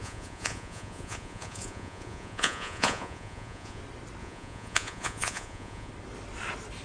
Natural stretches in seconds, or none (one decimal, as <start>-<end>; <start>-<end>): 3.8-4.2; 5.9-6.8